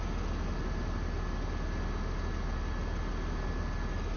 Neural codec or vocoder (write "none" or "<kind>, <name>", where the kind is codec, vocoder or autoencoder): none